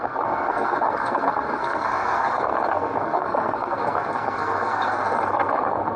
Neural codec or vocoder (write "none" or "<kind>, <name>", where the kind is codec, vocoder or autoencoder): codec, SNAC